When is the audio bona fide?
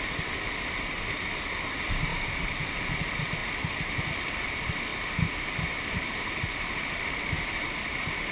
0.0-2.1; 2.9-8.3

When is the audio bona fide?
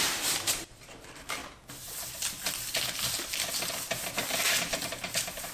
1.4-4.7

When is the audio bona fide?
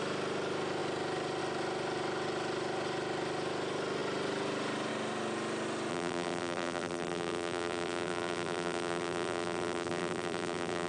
0.0-5.9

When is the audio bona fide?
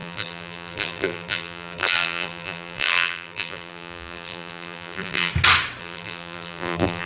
5.3-5.8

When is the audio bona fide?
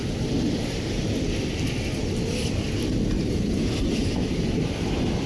0.0-3.2